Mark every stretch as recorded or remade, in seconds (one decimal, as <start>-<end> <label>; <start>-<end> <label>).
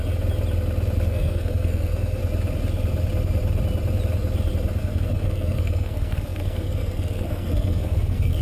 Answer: 0.0-1.1 recorded; 1.1-2.2 remade; 2.2-4.8 recorded; 4.8-8.4 remade